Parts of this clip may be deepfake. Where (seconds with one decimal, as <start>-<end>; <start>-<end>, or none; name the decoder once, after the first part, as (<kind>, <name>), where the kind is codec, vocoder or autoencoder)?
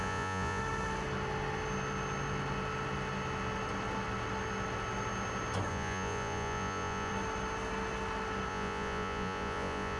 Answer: 0.0-0.6 (vocoder, Vocos); 5.7-7.1; 8.5-10.0